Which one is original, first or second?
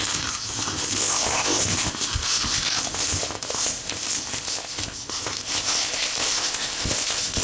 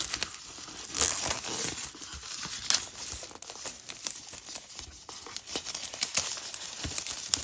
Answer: second